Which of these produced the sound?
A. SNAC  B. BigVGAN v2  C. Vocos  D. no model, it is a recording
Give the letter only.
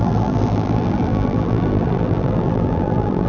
B